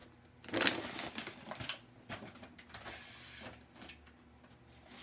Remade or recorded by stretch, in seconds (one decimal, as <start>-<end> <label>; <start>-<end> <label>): 0.0-5.0 recorded